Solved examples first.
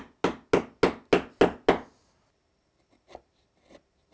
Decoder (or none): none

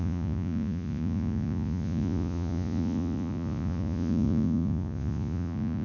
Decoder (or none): vocoder, Vocos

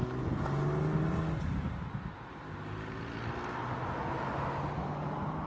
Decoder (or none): none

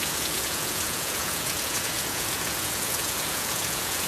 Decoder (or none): vocoder, Vocos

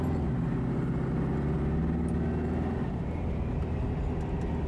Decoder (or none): none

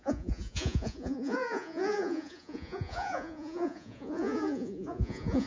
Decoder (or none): vocoder, Vocos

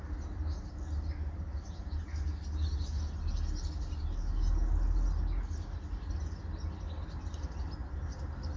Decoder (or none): none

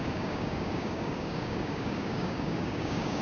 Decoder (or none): codec, DAC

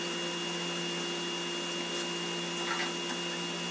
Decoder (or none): none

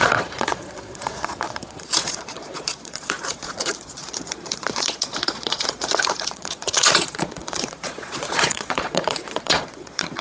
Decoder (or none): vocoder, Vocos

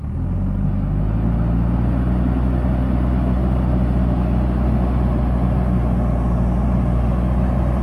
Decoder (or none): none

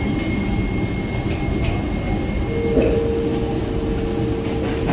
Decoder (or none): none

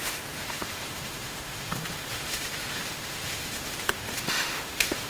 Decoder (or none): autoencoder, DAC-VAE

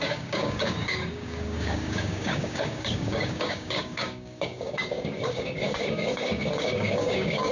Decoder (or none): codec, DAC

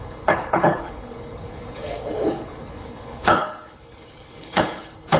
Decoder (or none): codec, HILCodec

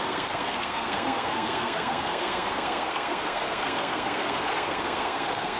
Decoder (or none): codec, SNAC